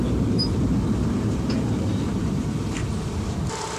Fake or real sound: fake